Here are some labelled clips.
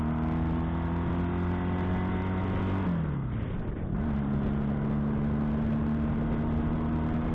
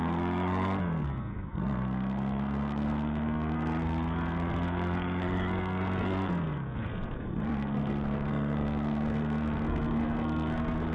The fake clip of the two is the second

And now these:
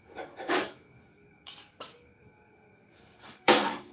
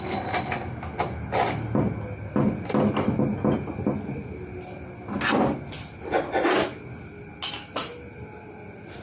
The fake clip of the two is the first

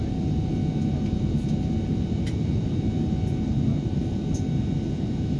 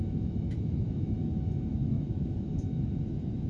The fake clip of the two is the second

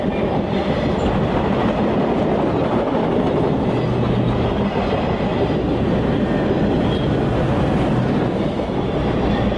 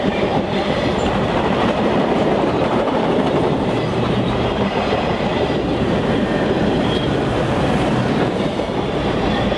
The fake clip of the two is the second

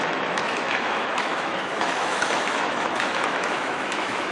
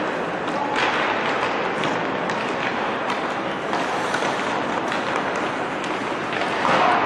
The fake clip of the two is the first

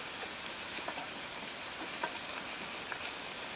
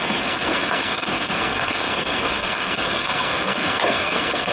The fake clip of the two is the second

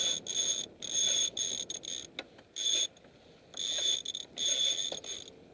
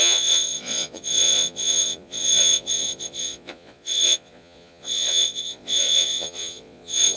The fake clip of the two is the second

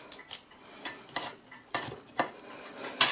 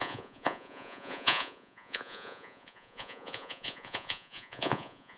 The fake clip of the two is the second